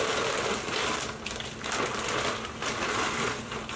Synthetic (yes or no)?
yes